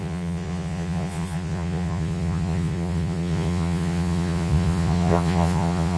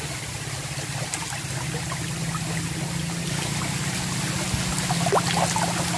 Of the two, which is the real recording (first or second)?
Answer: second